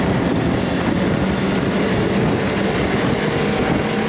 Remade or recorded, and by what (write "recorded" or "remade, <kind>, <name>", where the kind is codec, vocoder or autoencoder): recorded